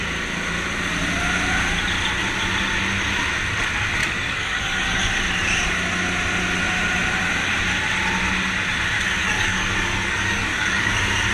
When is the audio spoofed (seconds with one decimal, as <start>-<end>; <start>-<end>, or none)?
4.0-5.0; 9.2-10.9